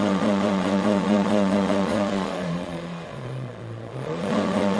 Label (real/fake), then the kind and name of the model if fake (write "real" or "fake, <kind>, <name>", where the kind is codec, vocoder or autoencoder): fake, vocoder, Vocos